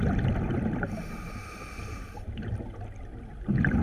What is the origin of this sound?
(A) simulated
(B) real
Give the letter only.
B